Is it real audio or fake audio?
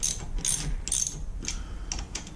real